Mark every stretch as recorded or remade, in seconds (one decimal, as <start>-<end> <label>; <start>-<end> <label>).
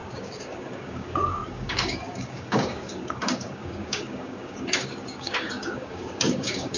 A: 0.0-6.8 remade